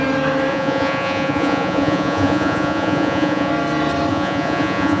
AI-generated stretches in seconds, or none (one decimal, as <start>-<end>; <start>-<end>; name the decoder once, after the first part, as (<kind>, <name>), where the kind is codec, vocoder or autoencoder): 0.5-3.5 (vocoder, Vocos); 4.1-5.0